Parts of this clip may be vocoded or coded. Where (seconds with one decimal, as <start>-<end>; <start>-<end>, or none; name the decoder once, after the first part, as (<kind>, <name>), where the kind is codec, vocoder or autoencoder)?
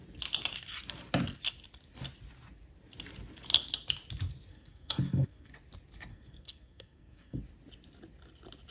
4.5-5.5 (codec, SNAC); 6.1-7.4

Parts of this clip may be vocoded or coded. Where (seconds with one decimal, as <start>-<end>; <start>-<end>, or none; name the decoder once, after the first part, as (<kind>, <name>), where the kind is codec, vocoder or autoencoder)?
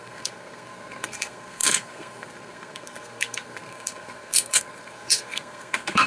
0.0-6.1 (codec, SNAC)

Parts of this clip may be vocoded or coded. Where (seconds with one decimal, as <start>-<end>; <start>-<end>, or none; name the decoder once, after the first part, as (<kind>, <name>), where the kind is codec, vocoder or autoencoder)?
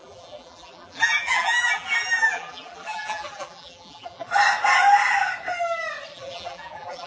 0.0-4.3 (vocoder, BigVGAN v2); 6.1-7.1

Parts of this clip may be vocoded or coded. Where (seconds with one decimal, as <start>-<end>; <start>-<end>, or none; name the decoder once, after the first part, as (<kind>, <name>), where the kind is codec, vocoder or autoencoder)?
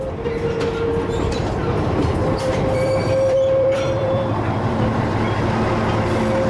1.4-5.3 (vocoder, BigVGAN v2)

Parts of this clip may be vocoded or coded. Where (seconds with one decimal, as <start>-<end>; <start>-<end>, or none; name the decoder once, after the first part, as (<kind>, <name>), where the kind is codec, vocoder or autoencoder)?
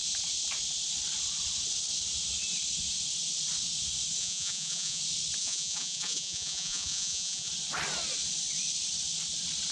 4.2-5.0 (vocoder, Vocos); 5.4-7.5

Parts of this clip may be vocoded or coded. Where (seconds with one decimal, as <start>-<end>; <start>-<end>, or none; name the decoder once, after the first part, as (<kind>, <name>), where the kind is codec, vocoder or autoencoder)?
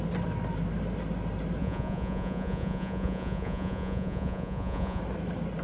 1.6-5.0 (vocoder, Vocos)